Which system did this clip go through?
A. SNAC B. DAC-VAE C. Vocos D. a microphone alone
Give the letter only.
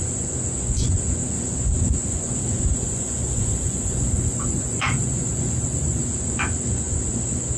C